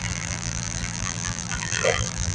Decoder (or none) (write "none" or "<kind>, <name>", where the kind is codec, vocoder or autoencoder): vocoder, BigVGAN v2